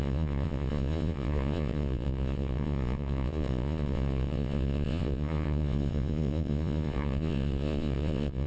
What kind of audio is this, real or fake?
fake